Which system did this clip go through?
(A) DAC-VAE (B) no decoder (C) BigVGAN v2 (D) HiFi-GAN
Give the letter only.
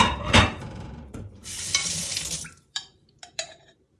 C